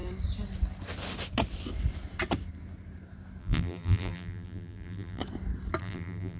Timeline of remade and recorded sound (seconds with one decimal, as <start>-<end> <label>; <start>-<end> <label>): 0.0-3.4 recorded; 3.4-5.2 remade; 5.2-5.8 recorded; 5.8-6.4 remade